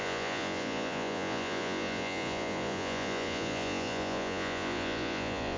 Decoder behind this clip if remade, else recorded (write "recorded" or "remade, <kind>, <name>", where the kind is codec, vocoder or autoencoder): remade, vocoder, Vocos